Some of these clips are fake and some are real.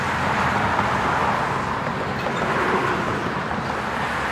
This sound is real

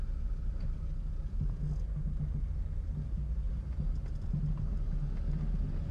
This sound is real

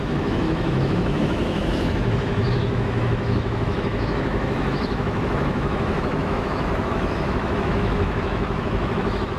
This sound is fake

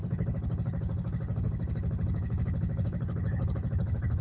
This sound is fake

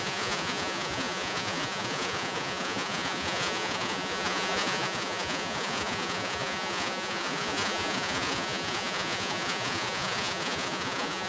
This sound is fake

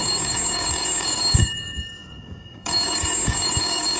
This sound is fake